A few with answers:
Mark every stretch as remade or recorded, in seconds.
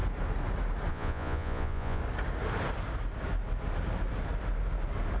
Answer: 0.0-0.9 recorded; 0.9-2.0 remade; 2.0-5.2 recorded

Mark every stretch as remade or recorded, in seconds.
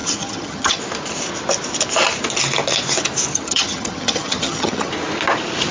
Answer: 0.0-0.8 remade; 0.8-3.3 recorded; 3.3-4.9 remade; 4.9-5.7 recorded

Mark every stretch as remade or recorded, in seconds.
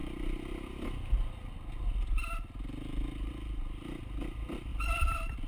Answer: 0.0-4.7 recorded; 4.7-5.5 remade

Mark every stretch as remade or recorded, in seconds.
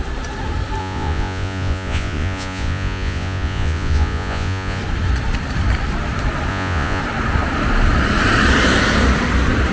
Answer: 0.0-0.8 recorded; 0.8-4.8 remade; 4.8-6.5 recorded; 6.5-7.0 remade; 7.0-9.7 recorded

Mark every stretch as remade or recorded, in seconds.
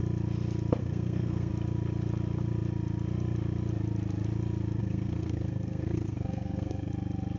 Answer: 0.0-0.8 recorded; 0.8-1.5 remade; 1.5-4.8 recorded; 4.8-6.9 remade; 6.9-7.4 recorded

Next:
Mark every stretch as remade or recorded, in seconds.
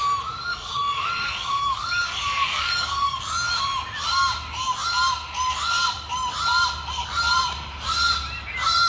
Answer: 0.0-0.5 recorded; 0.5-3.2 remade; 3.2-8.9 recorded